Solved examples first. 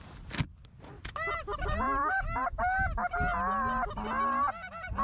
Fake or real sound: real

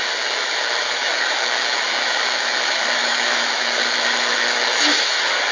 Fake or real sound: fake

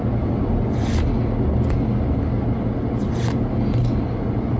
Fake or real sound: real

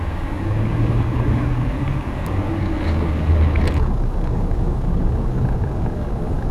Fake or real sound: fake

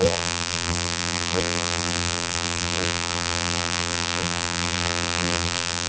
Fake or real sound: fake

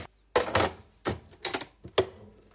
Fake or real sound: real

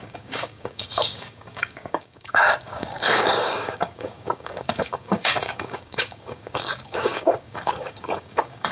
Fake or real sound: fake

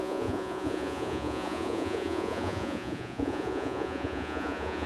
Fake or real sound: fake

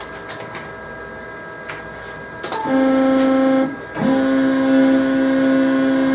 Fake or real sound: real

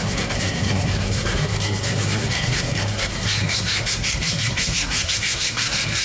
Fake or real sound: fake